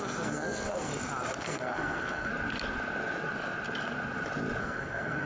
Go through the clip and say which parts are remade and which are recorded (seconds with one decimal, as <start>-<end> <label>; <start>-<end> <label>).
0.0-0.9 remade; 0.9-1.4 recorded; 1.4-2.3 remade; 2.3-4.6 recorded; 4.6-5.3 remade